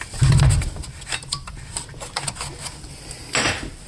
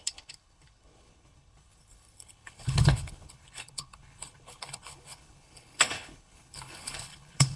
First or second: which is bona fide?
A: first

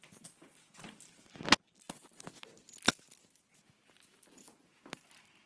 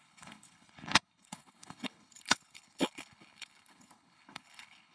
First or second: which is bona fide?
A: first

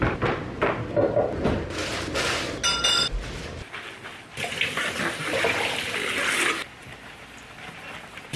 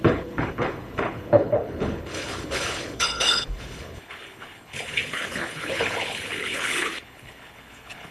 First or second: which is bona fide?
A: first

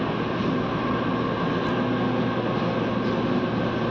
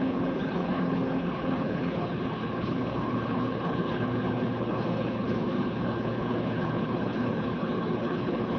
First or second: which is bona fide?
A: first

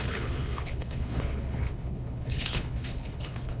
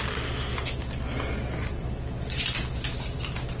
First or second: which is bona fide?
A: second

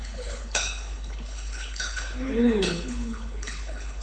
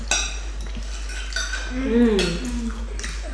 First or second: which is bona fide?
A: second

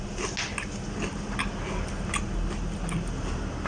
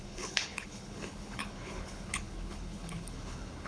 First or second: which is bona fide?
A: first